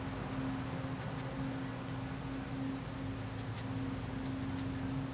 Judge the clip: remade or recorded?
recorded